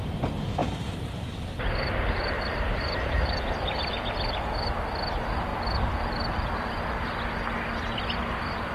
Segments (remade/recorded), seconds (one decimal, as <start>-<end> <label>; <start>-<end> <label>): 0.0-0.6 recorded; 0.6-4.4 remade; 4.4-8.7 recorded